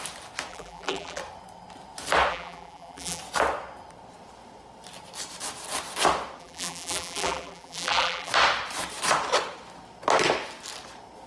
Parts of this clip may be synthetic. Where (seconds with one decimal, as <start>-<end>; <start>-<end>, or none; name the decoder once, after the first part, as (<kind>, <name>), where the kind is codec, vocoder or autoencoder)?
0.5-1.2 (vocoder, BigVGAN v2); 2.3-3.2; 6.4-8.3